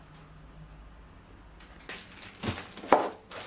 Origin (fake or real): real